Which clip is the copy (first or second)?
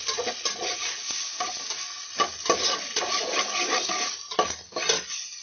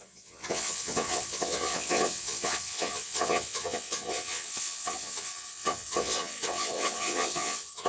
second